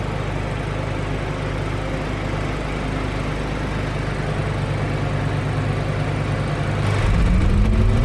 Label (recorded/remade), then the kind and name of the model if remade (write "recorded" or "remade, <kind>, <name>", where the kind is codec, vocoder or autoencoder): recorded